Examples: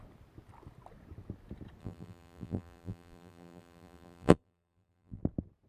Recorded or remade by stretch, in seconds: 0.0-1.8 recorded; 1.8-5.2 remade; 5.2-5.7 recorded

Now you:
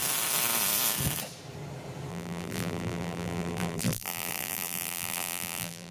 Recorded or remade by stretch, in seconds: 0.0-2.1 recorded; 2.1-5.9 remade